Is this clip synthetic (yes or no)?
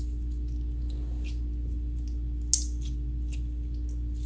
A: no